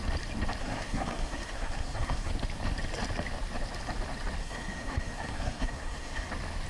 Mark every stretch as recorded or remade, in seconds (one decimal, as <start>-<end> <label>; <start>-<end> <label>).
0.0-0.6 recorded; 0.6-2.3 remade; 2.3-4.4 recorded; 4.4-6.3 remade; 6.3-6.7 recorded